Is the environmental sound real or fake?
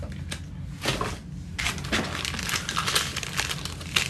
real